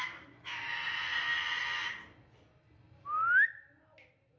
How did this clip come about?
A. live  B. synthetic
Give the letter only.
A